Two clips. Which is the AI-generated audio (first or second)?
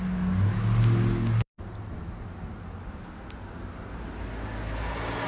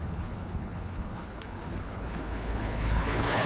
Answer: second